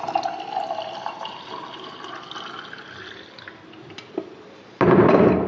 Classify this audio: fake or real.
real